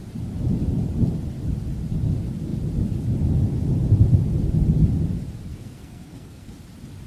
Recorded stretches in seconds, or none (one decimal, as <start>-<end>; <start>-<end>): 0.0-5.5; 6.5-7.1